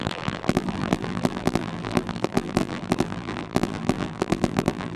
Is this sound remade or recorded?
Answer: remade